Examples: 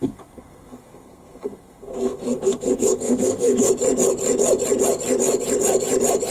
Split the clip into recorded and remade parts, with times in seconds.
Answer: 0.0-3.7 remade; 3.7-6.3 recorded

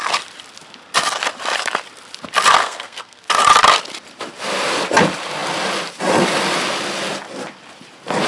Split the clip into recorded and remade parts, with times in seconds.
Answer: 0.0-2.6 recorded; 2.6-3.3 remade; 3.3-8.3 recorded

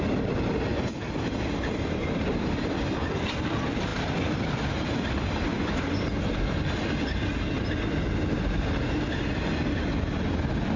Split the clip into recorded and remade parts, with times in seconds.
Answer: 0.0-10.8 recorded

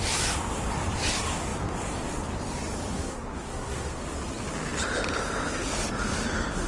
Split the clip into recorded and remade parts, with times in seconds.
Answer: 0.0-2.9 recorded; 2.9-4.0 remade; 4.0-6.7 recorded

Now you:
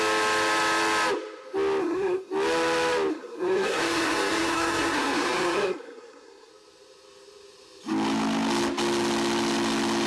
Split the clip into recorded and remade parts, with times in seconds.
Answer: 0.0-1.8 recorded; 1.8-2.3 remade; 2.3-3.1 recorded; 3.1-6.5 remade; 6.5-10.1 recorded